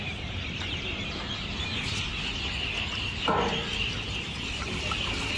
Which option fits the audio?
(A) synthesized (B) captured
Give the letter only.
B